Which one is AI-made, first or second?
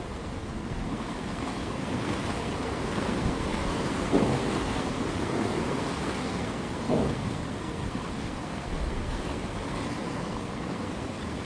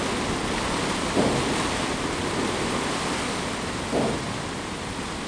first